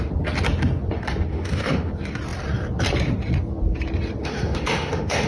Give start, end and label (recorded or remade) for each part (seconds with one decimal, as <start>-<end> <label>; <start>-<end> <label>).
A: 0.0-1.3 recorded; 1.3-1.9 remade; 1.9-4.2 recorded; 4.2-5.3 remade